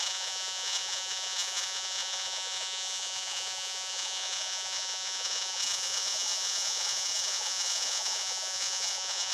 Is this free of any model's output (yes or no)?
no